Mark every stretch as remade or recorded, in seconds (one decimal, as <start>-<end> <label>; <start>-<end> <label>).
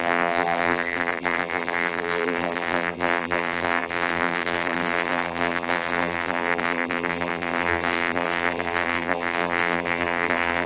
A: 0.0-10.7 remade